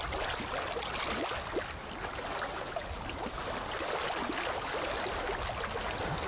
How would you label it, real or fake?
real